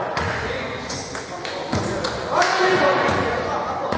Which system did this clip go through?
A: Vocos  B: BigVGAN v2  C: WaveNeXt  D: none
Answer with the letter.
A